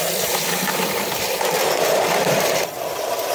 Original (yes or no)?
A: no